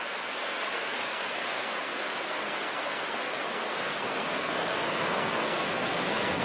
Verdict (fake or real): fake